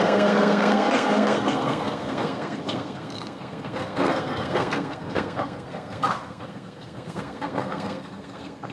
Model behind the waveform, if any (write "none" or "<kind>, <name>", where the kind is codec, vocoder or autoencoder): codec, SNAC